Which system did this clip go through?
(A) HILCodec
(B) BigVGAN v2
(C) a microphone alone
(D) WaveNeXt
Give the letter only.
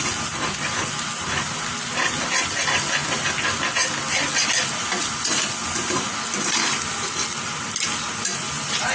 C